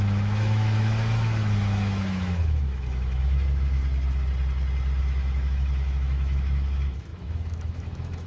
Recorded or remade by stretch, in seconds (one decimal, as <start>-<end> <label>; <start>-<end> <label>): 0.0-3.8 remade; 3.8-5.0 recorded; 5.0-8.3 remade